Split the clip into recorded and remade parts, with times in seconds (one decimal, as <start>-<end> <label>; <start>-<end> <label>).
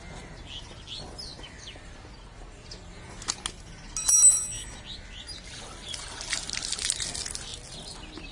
0.0-8.3 recorded